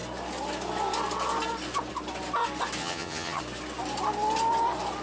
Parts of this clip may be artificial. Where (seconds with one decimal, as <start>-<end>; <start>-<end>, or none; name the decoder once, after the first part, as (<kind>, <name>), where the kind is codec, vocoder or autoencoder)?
2.8-3.4 (vocoder, HiFi-GAN)